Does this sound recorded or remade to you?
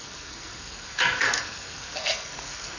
remade